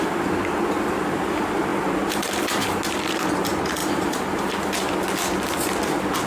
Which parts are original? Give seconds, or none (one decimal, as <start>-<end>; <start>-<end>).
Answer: 0.0-3.8; 4.4-6.3